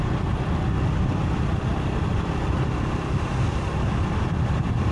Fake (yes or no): no